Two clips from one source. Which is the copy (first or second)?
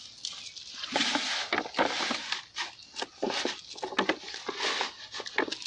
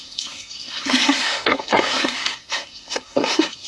second